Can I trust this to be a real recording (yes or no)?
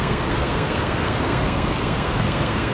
no